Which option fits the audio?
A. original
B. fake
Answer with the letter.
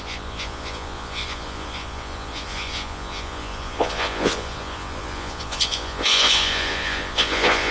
B